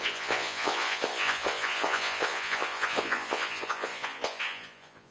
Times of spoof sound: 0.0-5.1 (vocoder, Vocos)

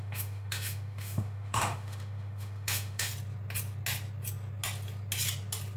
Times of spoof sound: 0.0-3.1 (autoencoder, DAC-VAE)

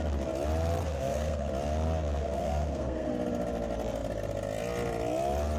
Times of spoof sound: 0.8-1.5 (codec, SNAC); 2.2-3.1

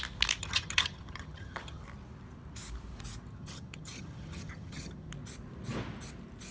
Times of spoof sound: 0.4-1.8 (vocoder, HiFi-GAN); 3.3-5.1

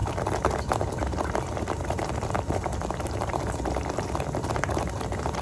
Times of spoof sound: none

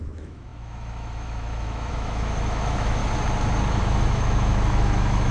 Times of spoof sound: 0.0-3.0 (autoencoder, DAC-VAE); 3.8-5.3

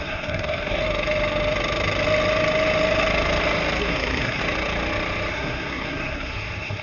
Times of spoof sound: 0.0-0.8 (codec, SNAC); 3.8-4.4; 5.3-6.8